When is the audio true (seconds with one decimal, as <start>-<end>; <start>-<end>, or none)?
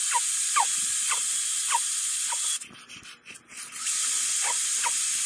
0.0-5.3